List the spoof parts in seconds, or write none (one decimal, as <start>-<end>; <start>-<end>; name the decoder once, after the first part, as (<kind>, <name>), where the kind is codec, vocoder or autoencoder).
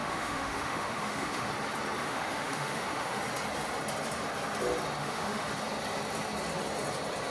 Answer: 0.0-1.5 (autoencoder, DAC-VAE); 2.0-3.2; 5.0-5.5